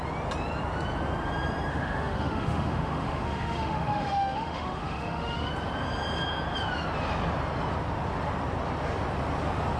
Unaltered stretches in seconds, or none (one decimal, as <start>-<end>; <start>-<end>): 0.0-1.7; 5.5-9.8